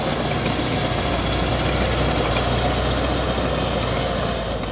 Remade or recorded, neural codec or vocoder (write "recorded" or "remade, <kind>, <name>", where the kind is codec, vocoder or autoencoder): recorded